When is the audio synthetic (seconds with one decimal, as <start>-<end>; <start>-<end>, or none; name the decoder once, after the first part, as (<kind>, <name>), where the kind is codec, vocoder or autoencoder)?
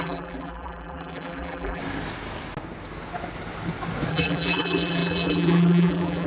0.0-1.8 (vocoder, BigVGAN v2); 4.1-6.3